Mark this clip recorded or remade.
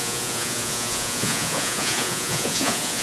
remade